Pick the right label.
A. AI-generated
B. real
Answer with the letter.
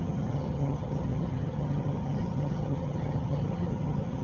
A